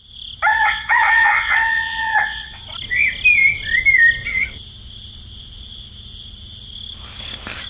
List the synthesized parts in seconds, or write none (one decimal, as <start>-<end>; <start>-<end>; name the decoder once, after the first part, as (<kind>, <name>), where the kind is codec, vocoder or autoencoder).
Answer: 0.5-2.6 (vocoder, WaveNeXt)